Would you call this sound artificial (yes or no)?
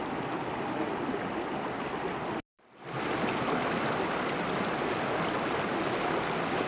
no